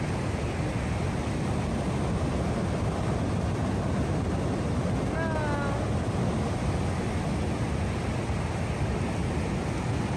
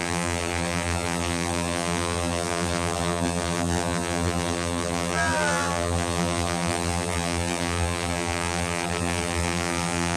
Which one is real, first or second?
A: first